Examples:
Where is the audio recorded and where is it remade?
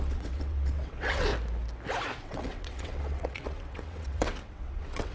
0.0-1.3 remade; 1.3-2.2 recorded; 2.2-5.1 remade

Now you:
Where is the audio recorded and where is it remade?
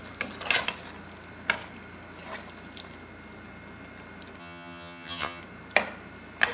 0.0-4.4 recorded; 4.4-5.4 remade; 5.4-6.5 recorded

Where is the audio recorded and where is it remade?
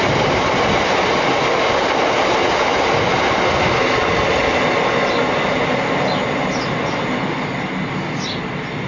0.0-8.9 recorded